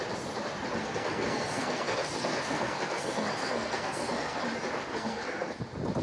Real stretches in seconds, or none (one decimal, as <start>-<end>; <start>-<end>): 0.0-0.8; 4.4-4.9; 5.6-6.0